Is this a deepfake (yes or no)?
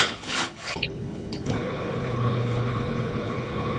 yes